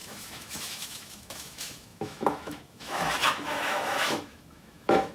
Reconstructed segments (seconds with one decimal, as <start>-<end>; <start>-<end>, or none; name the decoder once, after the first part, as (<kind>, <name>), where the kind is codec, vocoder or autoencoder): 0.0-5.1 (autoencoder, DAC-VAE)